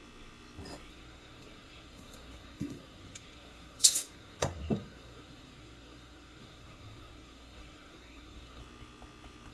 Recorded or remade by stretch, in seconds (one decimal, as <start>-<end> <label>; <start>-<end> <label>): 0.0-0.9 recorded; 0.9-8.6 remade; 8.6-9.5 recorded